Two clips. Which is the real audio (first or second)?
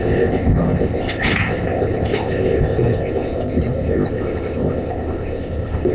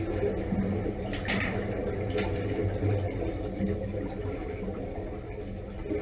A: second